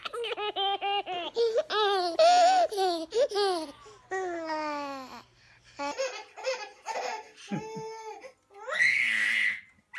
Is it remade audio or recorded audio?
recorded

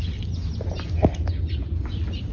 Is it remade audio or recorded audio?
recorded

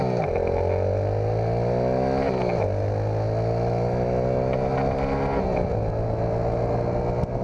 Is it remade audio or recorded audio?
recorded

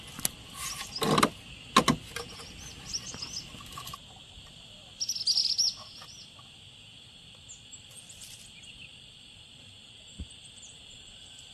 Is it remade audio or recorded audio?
recorded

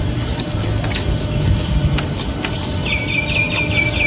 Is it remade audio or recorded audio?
recorded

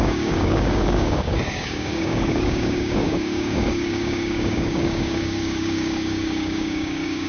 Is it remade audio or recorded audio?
remade